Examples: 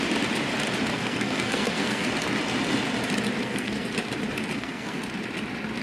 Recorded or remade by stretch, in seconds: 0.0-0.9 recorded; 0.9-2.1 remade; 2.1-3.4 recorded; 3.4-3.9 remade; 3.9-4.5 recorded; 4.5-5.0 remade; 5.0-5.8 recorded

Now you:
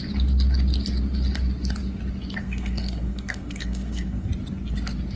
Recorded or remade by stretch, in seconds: 0.0-2.4 recorded; 2.4-4.3 remade; 4.3-5.2 recorded

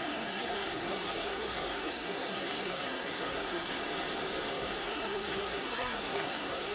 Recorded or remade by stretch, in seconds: 0.0-3.8 remade; 3.8-4.5 recorded; 4.5-6.7 remade

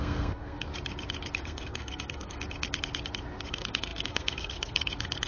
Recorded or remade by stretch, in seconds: 0.0-0.7 remade; 0.7-1.4 recorded; 1.4-2.4 remade; 2.4-3.5 recorded; 3.5-5.3 remade